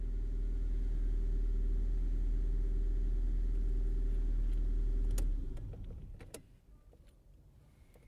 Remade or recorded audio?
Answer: recorded